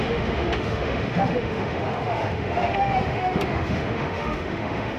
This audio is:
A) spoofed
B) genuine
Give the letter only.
A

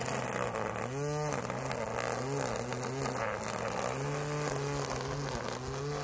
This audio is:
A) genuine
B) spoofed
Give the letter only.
A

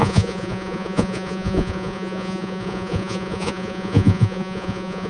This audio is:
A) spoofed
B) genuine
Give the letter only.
A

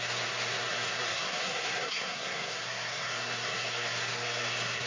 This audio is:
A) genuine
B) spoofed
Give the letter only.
B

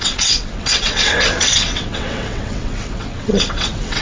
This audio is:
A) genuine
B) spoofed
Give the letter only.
B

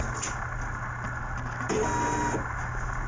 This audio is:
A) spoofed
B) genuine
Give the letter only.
B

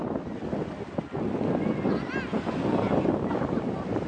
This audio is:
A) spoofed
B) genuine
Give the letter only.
B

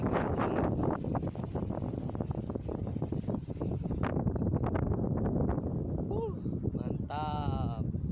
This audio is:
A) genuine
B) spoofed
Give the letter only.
A